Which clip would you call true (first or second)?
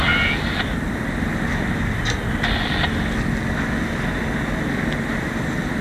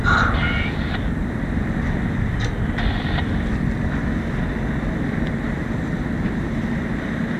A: first